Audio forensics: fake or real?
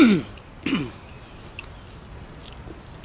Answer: real